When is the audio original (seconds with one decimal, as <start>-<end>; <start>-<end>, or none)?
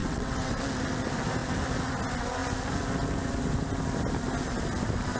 0.6-5.2